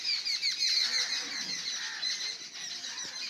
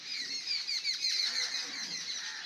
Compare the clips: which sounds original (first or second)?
first